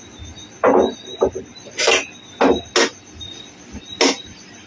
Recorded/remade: recorded